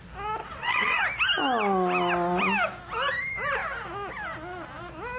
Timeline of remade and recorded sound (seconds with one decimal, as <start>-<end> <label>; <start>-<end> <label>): 0.0-0.4 recorded; 0.4-1.0 remade; 1.0-5.2 recorded